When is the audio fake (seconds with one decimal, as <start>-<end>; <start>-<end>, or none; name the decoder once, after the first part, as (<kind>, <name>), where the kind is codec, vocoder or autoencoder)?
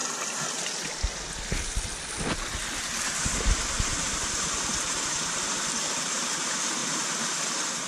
3.9-6.2 (vocoder, BigVGAN v2); 6.8-7.5